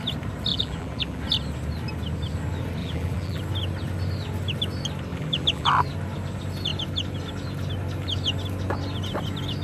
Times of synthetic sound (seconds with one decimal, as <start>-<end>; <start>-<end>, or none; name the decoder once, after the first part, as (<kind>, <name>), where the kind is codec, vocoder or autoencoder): 0.5-1.2 (vocoder, BigVGAN v2); 2.8-3.4; 5.1-5.7